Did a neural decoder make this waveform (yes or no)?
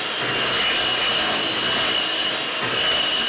no